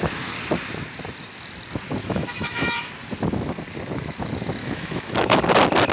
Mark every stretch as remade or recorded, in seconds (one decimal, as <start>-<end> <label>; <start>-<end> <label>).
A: 0.0-2.0 recorded; 2.0-2.9 remade; 2.9-4.6 recorded; 4.6-5.4 remade; 5.4-5.9 recorded